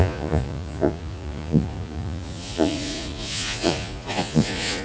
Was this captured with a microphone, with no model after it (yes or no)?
no